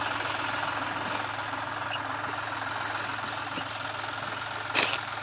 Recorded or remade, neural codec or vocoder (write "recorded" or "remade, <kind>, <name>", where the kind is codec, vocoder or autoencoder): recorded